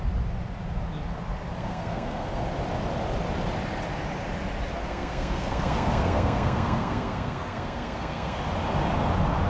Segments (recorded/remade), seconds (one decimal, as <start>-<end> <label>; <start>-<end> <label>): 0.0-1.6 recorded; 1.6-2.4 remade; 2.4-4.8 recorded; 4.8-8.4 remade; 8.4-9.5 recorded